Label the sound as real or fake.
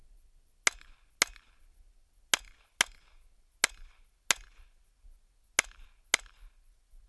real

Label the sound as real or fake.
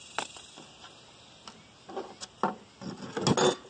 real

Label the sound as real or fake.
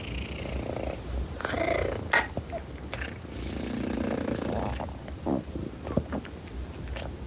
real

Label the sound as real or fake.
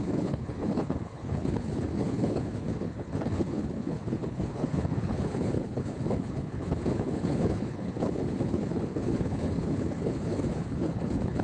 fake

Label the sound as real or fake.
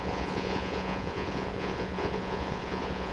fake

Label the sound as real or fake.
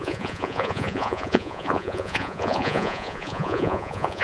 fake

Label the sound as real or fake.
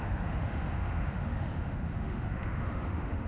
fake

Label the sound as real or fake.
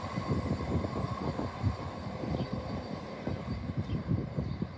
fake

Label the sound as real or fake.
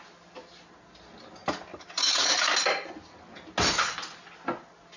real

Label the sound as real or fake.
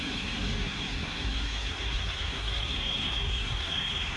fake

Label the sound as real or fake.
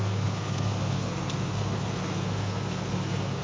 fake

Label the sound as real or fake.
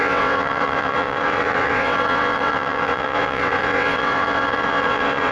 fake